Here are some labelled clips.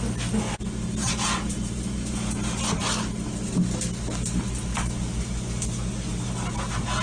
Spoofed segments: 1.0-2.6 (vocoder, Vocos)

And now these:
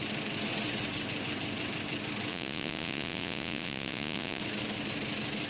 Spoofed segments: 2.3-4.4 (vocoder, Vocos)

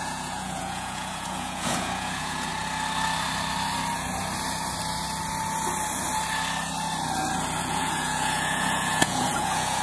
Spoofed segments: 0.0-2.5 (vocoder, Vocos); 7.6-9.8

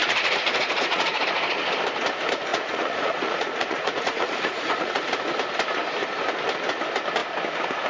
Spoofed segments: 0.0-1.2 (vocoder, Vocos); 2.5-5.0

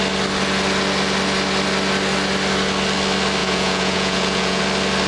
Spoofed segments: 3.4-4.6 (vocoder, Vocos)

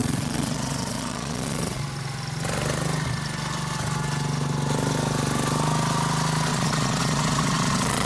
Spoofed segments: 0.0-1.8 (vocoder, Vocos); 6.5-8.1

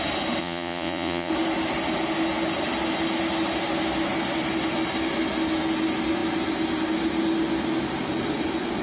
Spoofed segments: 0.4-1.3 (vocoder, Vocos)